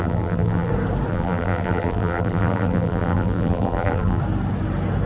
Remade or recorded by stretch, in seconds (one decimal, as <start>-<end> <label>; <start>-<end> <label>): 0.0-0.7 remade; 0.7-1.1 recorded; 1.1-4.2 remade; 4.2-5.1 recorded